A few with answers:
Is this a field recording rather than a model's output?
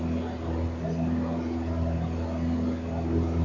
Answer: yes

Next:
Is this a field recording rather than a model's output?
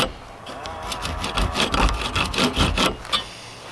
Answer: yes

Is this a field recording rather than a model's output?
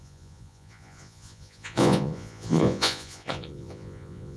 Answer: no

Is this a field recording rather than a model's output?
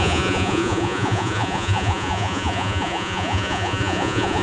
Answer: no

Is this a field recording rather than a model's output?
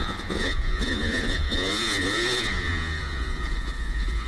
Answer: no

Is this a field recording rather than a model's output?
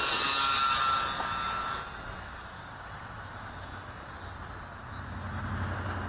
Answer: yes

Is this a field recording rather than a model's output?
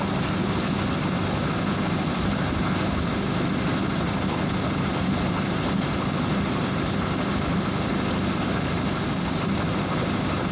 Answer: yes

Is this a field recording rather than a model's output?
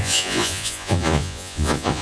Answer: no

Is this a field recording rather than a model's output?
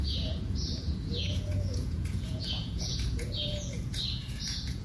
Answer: no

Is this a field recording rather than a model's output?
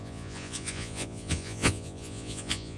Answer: no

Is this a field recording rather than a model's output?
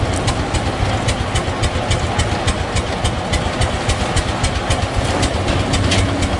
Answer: yes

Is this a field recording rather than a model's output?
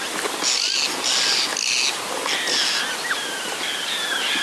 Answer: yes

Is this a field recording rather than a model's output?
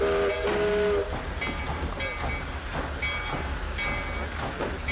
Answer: yes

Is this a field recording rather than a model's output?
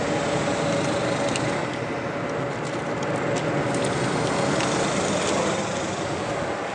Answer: yes